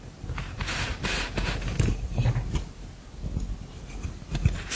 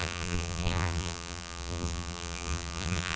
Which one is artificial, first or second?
second